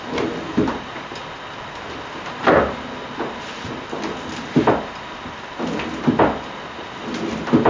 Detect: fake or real real